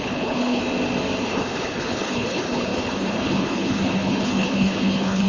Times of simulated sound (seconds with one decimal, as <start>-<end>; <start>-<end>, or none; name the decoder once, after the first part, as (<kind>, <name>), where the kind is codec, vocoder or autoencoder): 0.0-0.6 (codec, HILCodec); 1.2-5.3